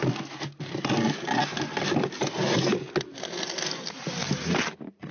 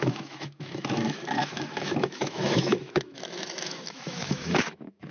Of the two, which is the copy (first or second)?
second